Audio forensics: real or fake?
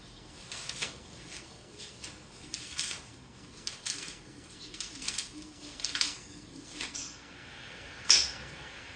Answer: fake